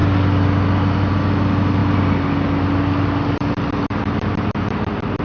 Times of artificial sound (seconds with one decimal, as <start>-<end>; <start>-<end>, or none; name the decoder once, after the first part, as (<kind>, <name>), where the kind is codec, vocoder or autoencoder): 1.8-5.2 (vocoder, BigVGAN v2)